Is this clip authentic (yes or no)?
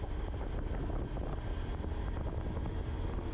yes